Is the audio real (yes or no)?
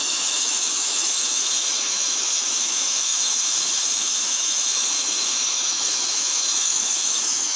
no